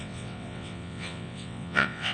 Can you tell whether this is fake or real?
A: fake